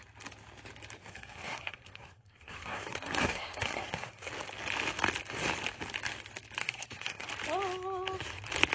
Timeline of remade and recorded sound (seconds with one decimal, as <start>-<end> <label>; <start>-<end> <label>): 0.0-1.0 recorded; 1.0-4.3 remade; 4.3-6.6 recorded; 6.6-7.3 remade; 7.3-8.7 recorded